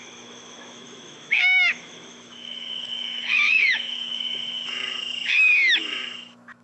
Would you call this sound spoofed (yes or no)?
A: yes